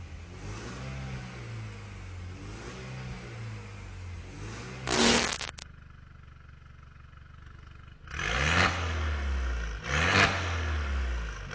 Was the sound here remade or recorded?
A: recorded